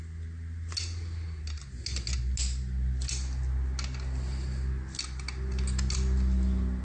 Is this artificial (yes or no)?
no